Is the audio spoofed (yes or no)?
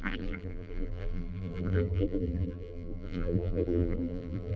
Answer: yes